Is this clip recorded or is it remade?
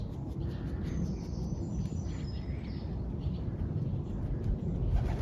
recorded